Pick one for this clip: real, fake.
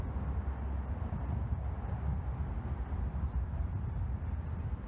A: real